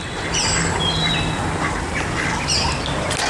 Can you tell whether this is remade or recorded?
recorded